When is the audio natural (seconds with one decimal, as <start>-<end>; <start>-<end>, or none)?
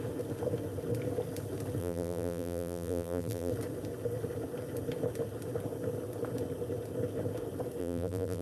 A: 0.0-1.8; 3.5-7.8